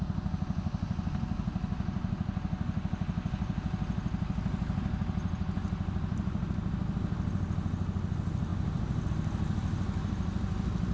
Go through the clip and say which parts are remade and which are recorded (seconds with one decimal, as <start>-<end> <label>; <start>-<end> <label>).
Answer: 0.0-10.9 recorded